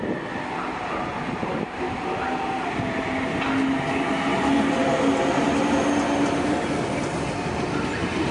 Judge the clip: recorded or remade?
recorded